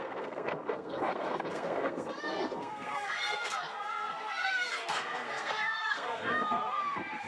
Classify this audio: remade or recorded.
remade